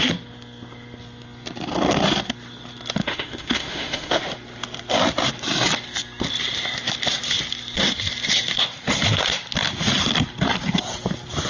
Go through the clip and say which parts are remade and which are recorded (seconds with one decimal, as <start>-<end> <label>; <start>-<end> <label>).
0.0-3.0 recorded; 3.0-4.2 remade; 4.2-11.5 recorded